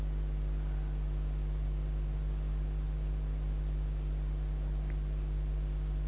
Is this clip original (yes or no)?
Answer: yes